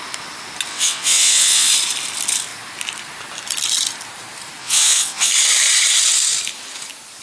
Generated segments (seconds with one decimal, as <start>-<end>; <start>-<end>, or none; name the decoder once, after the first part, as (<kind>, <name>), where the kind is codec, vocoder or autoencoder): 0.7-1.7 (vocoder, WaveNeXt); 4.6-5.3